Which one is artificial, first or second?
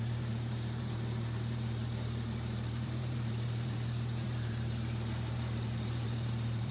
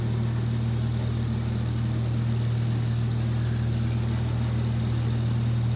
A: first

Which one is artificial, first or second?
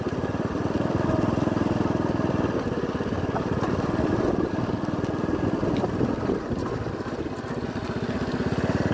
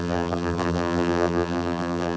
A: second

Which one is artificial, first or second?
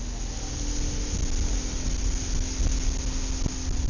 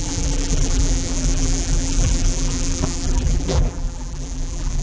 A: second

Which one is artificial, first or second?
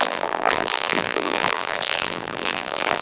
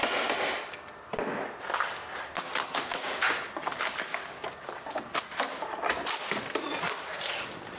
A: first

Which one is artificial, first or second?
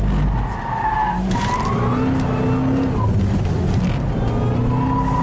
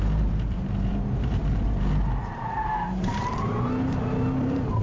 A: second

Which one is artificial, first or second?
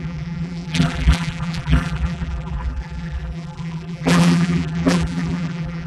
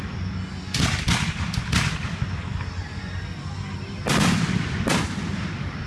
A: first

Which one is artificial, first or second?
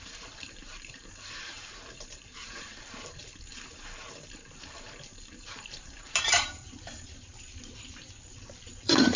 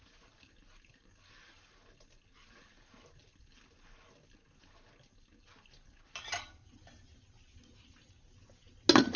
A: first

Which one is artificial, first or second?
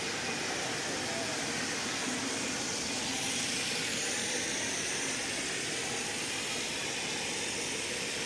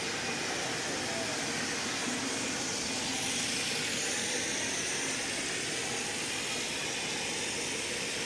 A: first